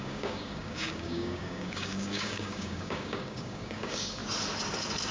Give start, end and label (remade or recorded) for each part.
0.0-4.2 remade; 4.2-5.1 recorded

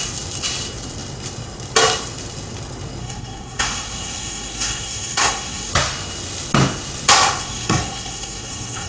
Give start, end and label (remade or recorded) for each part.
0.0-3.0 recorded; 3.0-5.7 remade; 5.7-7.4 recorded; 7.4-8.9 remade

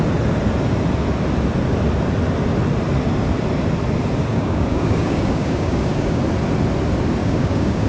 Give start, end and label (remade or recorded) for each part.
0.0-4.3 recorded; 4.3-6.2 remade; 6.2-7.2 recorded; 7.2-7.9 remade

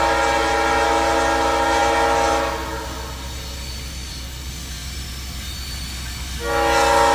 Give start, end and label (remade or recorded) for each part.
0.0-7.1 recorded

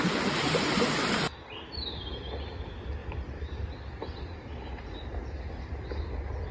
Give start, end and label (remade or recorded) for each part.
0.0-3.0 recorded; 3.0-3.7 remade; 3.7-6.5 recorded

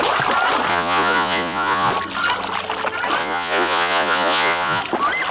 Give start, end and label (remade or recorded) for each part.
0.0-0.7 recorded; 0.7-1.9 remade; 1.9-3.2 recorded; 3.2-4.8 remade; 4.8-5.3 recorded

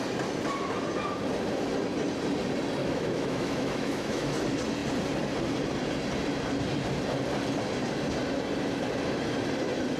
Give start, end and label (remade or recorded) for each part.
0.0-2.8 recorded; 2.8-4.3 remade; 4.3-10.0 recorded

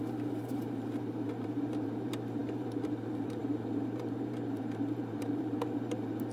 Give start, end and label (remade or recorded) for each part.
0.0-6.3 remade